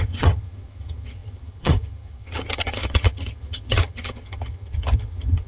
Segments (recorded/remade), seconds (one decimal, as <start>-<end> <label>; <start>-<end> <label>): 0.0-5.5 remade